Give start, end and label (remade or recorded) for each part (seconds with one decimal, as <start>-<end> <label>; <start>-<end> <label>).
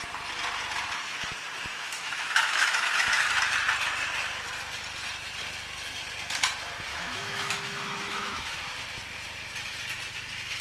0.0-1.7 recorded; 1.7-3.3 remade; 3.3-6.9 recorded; 6.9-8.6 remade; 8.6-10.6 recorded